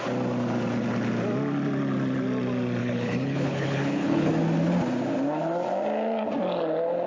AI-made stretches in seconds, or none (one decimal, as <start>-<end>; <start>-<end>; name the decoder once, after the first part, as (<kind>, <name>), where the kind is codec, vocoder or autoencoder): 2.8-4.3 (codec, HILCodec)